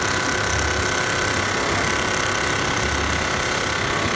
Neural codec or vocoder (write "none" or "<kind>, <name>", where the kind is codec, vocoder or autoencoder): none